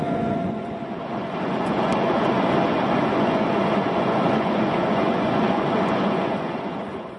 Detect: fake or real fake